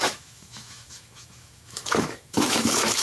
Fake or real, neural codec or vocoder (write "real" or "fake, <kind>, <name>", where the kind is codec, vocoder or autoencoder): fake, autoencoder, DAC-VAE